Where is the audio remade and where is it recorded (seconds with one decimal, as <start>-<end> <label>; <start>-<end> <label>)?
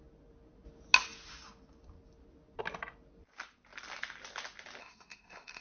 0.0-4.8 recorded; 4.8-5.6 remade